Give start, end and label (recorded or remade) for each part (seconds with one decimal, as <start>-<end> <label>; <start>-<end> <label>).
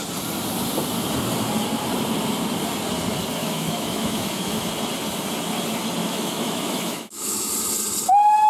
0.0-3.4 recorded; 3.4-4.7 remade; 4.7-6.0 recorded; 6.0-7.5 remade; 7.5-8.5 recorded